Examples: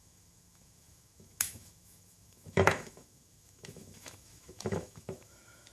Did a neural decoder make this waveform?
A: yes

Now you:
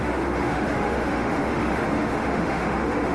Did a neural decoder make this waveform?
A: yes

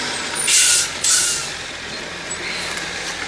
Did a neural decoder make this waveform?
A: no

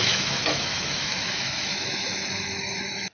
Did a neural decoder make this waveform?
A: yes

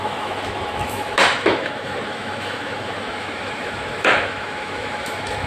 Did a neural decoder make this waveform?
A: yes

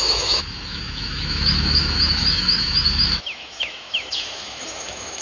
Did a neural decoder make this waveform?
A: yes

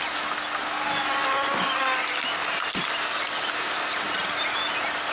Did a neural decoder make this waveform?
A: no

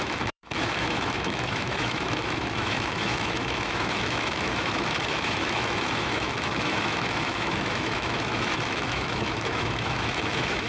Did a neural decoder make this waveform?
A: yes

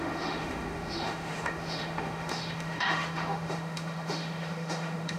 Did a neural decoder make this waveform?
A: yes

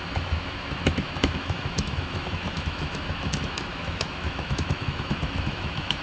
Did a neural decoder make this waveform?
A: yes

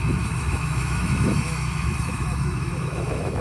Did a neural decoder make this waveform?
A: yes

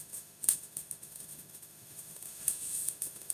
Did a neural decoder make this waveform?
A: yes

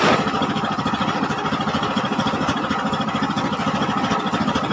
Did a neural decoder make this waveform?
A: no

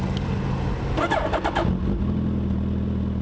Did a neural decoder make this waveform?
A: no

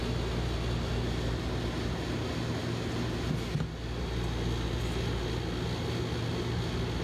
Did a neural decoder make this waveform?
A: no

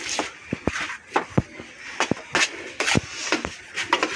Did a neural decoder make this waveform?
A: no